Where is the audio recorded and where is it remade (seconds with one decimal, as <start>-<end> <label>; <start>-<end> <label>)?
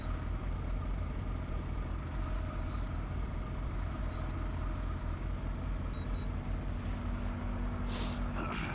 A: 0.0-4.0 remade; 4.0-8.7 recorded